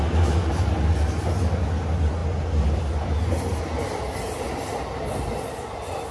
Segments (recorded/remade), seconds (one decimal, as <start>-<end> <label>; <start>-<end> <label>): 0.0-6.1 recorded